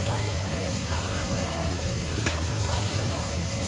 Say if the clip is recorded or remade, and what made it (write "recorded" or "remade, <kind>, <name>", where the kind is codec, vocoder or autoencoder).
remade, codec, SNAC